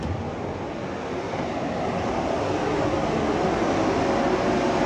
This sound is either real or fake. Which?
real